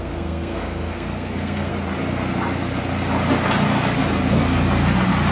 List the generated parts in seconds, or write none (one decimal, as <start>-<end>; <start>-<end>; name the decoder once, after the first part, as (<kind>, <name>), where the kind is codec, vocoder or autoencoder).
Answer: 0.0-1.7 (codec, SNAC)